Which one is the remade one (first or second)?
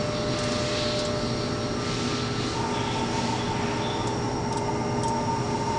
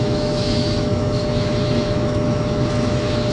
second